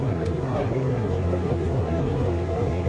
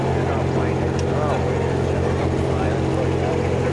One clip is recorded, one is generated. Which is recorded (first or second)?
second